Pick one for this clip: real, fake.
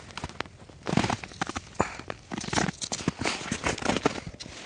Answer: real